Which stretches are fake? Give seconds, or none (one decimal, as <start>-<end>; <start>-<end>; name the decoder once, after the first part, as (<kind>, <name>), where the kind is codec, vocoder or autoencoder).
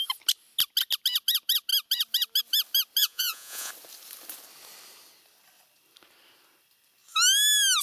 3.0-3.7 (vocoder, Vocos)